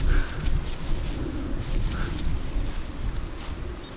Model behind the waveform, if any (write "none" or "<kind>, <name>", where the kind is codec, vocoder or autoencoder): none